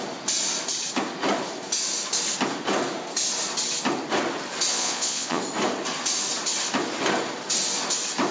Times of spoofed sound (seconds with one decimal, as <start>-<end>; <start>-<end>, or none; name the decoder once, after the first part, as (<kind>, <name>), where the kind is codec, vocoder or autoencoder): 4.7-5.4 (vocoder, Vocos)